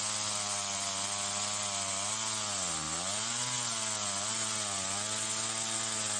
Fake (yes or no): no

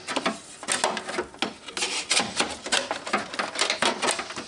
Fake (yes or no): no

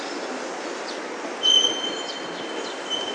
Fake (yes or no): no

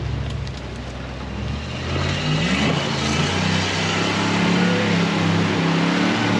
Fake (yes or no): no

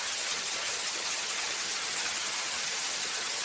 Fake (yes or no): yes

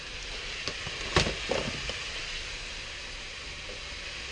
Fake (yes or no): no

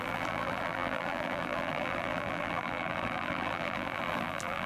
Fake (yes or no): yes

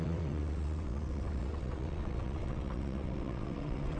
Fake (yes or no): yes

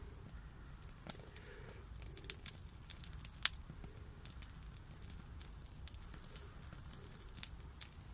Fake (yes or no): no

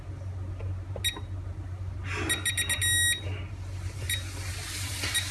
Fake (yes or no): no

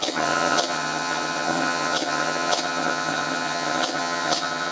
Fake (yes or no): yes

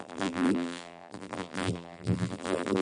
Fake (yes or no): yes